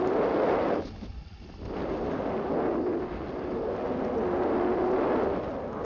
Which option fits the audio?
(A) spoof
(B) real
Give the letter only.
B